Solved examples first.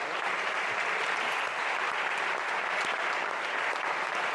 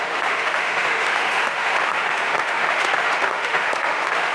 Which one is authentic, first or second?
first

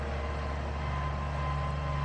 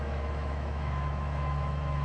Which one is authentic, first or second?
first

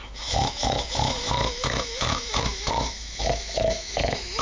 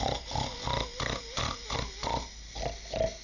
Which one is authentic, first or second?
second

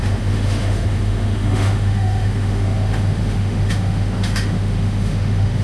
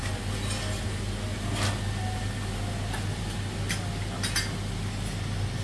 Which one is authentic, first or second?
second